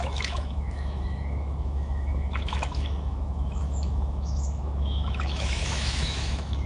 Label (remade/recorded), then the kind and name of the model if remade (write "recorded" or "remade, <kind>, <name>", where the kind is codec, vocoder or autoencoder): remade, autoencoder, DAC-VAE